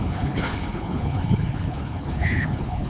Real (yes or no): no